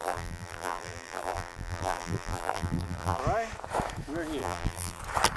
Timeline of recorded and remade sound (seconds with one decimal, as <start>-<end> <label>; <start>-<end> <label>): 0.0-3.2 remade; 3.2-4.4 recorded; 4.4-5.0 remade; 5.0-5.4 recorded